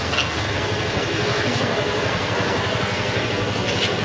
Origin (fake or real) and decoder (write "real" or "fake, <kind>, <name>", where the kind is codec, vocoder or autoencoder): fake, codec, SNAC